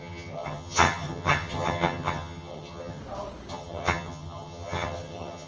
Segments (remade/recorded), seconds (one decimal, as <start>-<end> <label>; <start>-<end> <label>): 0.0-3.0 remade; 3.0-3.5 recorded; 3.5-5.5 remade